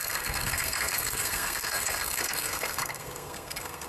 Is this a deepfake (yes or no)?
yes